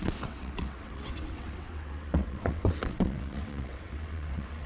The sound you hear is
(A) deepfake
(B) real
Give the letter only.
A